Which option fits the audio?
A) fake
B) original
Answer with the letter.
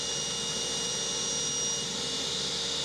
B